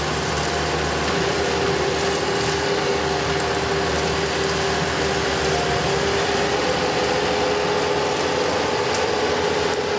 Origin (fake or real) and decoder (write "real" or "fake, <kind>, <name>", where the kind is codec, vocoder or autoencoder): real